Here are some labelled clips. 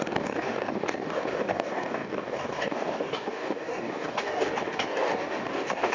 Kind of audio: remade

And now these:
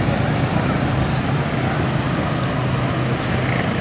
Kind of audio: recorded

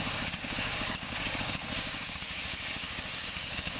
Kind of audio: remade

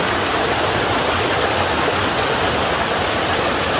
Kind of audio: recorded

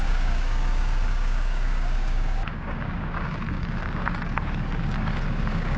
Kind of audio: remade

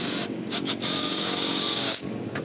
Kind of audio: remade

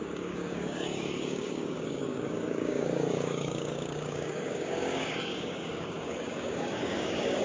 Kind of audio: remade